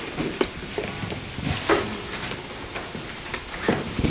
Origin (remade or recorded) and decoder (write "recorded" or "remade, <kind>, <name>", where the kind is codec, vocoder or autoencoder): recorded